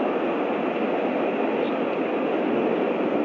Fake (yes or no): no